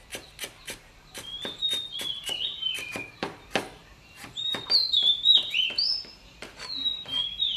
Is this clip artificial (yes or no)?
yes